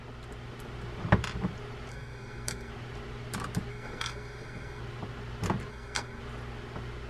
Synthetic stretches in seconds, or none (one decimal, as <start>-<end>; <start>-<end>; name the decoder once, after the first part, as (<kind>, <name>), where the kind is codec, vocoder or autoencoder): 1.9-2.7 (codec, SNAC); 3.7-4.8; 5.7-6.2